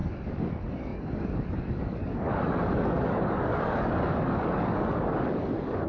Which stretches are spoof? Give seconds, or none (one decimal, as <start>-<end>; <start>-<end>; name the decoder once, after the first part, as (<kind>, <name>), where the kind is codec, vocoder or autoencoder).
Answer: 0.0-5.9 (codec, DAC)